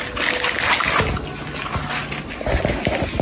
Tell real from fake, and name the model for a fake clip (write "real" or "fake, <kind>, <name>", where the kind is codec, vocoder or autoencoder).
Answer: real